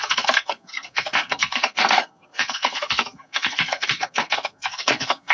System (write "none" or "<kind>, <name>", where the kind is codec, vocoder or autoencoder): codec, SNAC